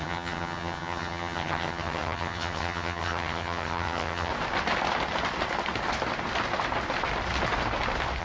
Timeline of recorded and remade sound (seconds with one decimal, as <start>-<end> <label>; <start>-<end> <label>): 0.0-4.3 remade; 4.3-8.2 recorded